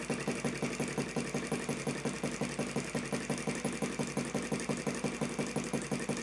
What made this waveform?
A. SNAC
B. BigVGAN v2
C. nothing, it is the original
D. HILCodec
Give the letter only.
C